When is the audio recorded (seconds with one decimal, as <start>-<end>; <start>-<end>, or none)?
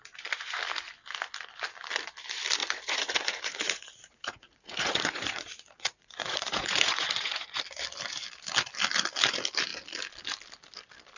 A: 0.0-2.6; 7.6-11.2